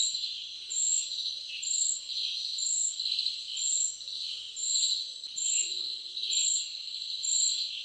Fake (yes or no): no